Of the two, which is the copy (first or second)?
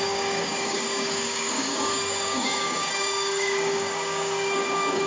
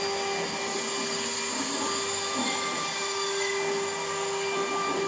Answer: first